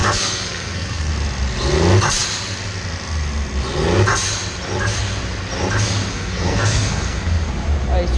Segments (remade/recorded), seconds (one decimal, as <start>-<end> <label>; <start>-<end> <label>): 0.0-1.1 remade; 1.1-6.1 recorded; 6.1-7.5 remade; 7.5-8.2 recorded